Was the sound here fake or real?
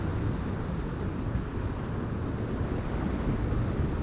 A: real